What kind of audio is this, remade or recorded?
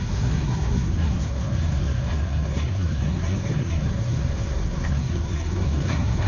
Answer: remade